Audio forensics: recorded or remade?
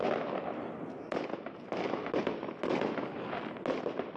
recorded